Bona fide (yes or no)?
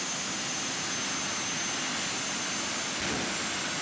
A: yes